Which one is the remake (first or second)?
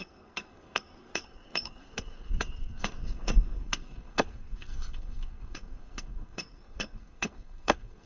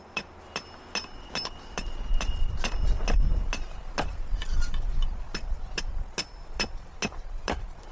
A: first